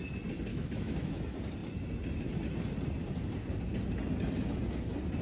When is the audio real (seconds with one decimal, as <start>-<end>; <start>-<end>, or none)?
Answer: 0.0-0.5; 1.2-5.2